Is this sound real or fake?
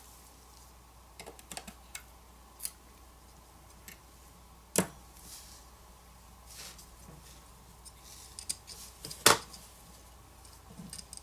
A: real